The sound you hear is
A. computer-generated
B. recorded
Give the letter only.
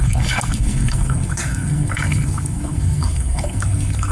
A